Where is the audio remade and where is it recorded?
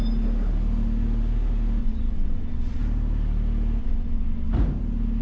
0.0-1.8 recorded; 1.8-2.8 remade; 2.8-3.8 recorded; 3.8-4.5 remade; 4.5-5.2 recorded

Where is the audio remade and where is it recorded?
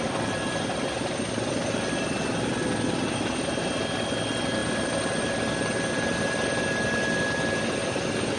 0.0-8.4 recorded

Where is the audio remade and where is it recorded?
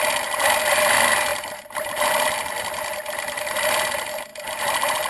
0.0-1.3 recorded; 1.3-2.1 remade; 2.1-4.3 recorded; 4.3-5.1 remade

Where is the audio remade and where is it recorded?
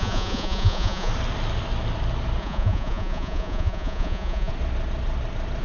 0.0-1.1 remade; 1.1-2.4 recorded; 2.4-4.5 remade; 4.5-5.6 recorded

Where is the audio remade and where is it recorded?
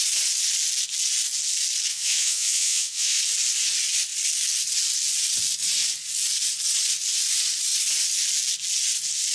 0.0-1.9 recorded; 1.9-3.2 remade; 3.2-9.3 recorded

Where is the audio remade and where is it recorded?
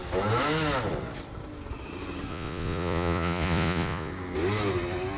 0.0-2.3 recorded; 2.3-4.1 remade; 4.1-5.2 recorded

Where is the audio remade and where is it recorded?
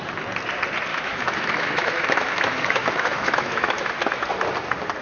0.0-0.9 recorded; 0.9-3.9 remade; 3.9-5.0 recorded